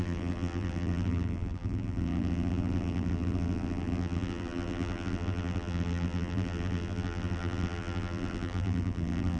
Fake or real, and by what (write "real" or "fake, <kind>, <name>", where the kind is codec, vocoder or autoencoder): fake, vocoder, BigVGAN v2